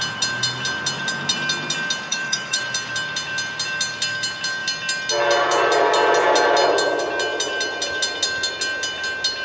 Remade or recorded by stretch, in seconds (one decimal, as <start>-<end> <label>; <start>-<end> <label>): 0.0-2.1 recorded; 2.1-2.6 remade; 2.6-9.4 recorded